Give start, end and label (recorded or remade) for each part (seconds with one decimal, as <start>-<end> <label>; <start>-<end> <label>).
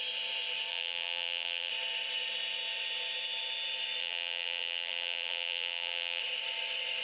0.0-0.7 recorded; 0.7-1.7 remade; 1.7-4.0 recorded; 4.0-6.2 remade; 6.2-7.0 recorded